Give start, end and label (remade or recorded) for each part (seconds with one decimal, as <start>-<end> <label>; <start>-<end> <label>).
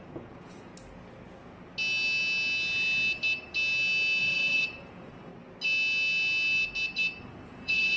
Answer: 0.0-0.7 remade; 0.7-4.2 recorded; 4.2-5.3 remade; 5.3-7.2 recorded; 7.2-8.0 remade